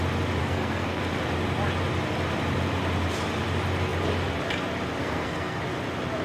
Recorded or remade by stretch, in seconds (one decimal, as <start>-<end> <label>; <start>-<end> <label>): 0.0-0.4 recorded; 0.4-1.0 remade; 1.0-5.0 recorded; 5.0-5.6 remade; 5.6-6.2 recorded